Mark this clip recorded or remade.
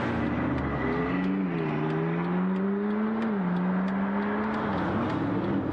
recorded